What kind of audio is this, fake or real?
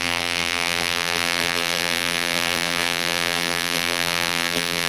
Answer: fake